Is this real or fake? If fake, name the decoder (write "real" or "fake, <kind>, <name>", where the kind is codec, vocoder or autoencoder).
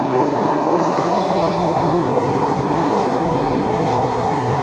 fake, codec, SNAC